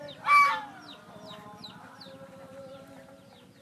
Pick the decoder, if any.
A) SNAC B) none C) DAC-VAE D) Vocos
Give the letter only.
B